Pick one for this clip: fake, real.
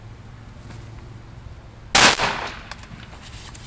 real